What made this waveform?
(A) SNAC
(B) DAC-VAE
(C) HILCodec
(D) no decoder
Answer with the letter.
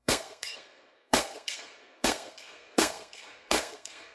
A